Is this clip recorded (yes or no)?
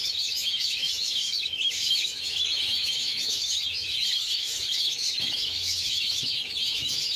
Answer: no